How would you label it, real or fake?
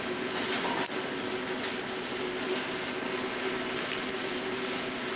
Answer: real